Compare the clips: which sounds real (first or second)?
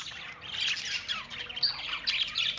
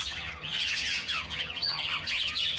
first